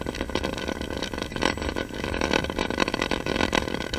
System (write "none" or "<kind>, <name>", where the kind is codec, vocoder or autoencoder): codec, DAC